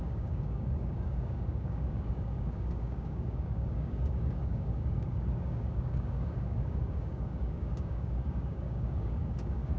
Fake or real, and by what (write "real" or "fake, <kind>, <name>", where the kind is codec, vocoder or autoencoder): fake, codec, DAC